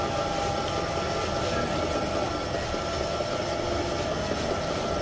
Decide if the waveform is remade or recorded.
recorded